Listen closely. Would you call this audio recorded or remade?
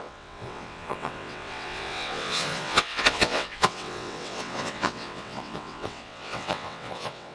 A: remade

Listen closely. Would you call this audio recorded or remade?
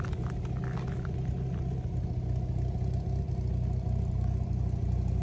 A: recorded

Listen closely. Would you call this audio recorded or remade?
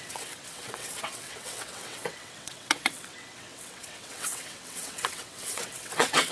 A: remade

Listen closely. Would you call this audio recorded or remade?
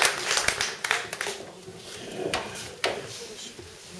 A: recorded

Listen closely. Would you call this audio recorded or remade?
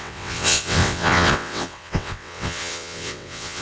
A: remade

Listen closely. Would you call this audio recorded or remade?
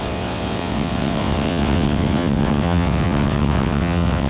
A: remade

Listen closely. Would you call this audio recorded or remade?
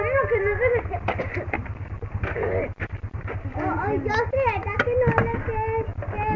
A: recorded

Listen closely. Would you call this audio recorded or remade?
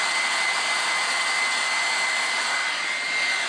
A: recorded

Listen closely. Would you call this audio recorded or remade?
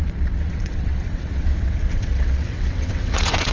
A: remade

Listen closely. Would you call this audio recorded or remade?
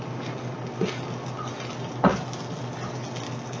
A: recorded